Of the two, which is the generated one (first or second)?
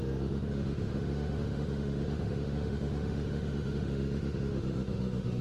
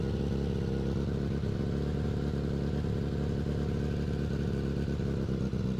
first